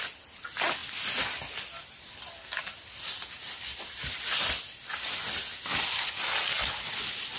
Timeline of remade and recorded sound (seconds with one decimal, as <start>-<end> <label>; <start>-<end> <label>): 0.0-7.4 recorded